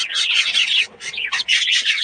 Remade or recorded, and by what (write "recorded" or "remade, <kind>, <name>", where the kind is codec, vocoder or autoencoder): remade, vocoder, WaveNeXt